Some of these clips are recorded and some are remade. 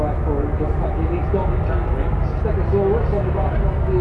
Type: recorded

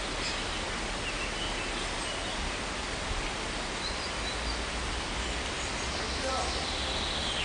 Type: recorded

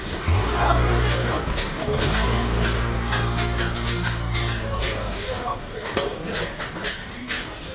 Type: remade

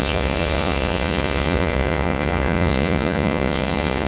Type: remade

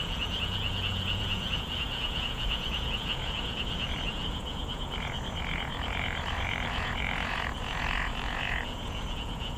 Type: remade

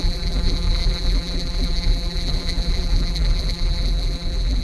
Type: remade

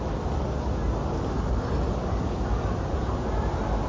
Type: recorded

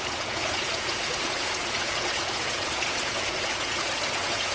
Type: remade